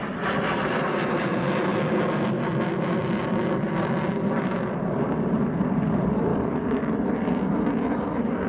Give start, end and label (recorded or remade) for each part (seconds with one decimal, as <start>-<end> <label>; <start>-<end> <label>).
0.0-6.3 recorded; 6.3-6.9 remade; 6.9-8.5 recorded